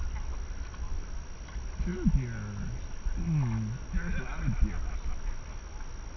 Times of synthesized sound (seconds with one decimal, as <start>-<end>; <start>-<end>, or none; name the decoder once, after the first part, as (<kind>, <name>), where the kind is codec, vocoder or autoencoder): none